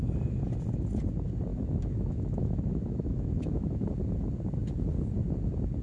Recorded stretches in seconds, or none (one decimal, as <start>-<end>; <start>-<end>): 0.0-1.5; 3.9-5.8